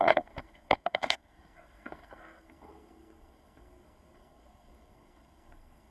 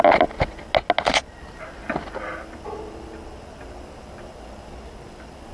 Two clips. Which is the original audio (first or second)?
second